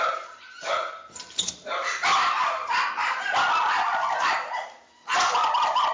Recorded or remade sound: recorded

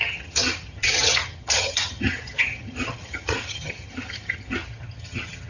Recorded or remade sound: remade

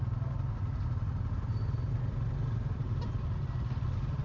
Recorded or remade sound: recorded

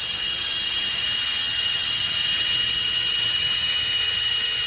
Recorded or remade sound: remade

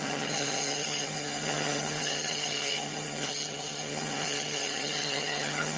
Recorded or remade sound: remade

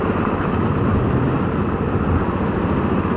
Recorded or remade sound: recorded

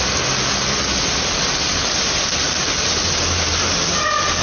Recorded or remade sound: recorded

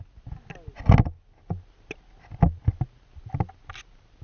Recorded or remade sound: recorded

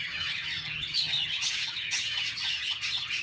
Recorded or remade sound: remade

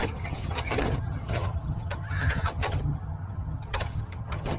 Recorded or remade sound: remade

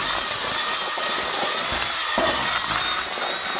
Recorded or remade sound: recorded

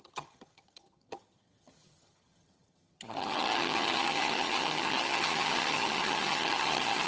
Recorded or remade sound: remade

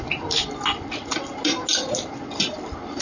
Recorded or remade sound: recorded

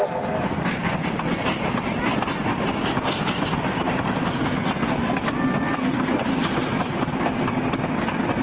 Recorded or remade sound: recorded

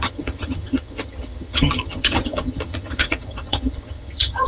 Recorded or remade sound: remade